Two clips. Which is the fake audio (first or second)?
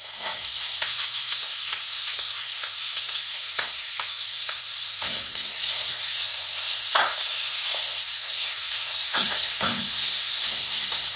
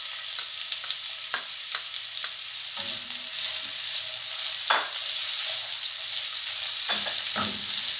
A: first